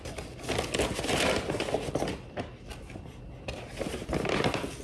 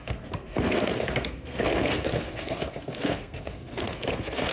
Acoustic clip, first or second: first